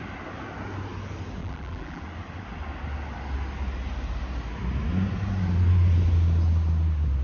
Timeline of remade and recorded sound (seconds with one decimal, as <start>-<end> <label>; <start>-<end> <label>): 0.0-1.4 recorded; 1.4-2.0 remade; 2.0-7.2 recorded